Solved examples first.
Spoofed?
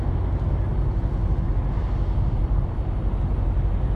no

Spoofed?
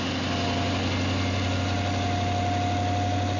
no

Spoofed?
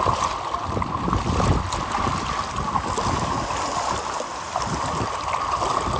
no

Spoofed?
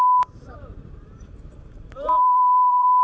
yes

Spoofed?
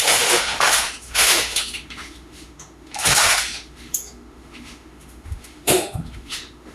yes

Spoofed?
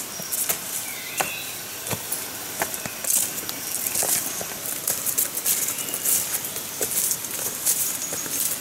no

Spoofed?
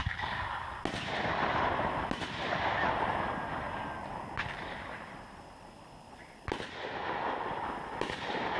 no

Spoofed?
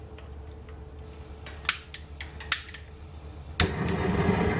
no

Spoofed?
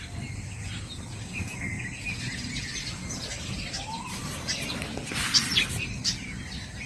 no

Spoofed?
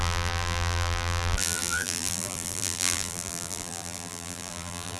yes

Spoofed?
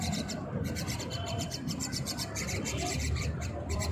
yes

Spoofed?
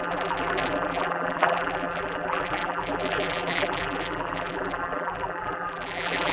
yes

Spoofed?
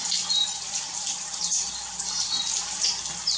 no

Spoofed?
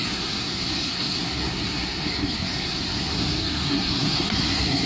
yes